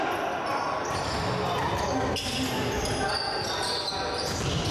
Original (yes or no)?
yes